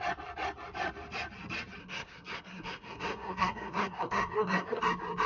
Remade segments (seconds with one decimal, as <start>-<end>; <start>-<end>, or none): 1.8-4.8